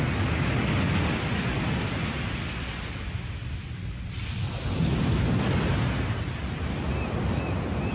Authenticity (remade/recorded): recorded